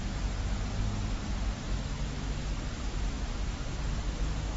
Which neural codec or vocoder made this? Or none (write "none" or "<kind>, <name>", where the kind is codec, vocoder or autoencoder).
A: none